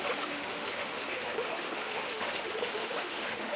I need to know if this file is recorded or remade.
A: remade